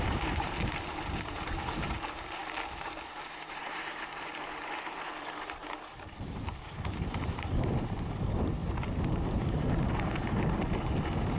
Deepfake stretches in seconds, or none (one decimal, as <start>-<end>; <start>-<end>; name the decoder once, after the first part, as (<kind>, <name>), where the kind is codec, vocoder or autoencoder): 0.0-11.4 (vocoder, BigVGAN v2)